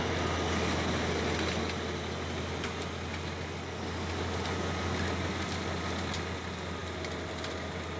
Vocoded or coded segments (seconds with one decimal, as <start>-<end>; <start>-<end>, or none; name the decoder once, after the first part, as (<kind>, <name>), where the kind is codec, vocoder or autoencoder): none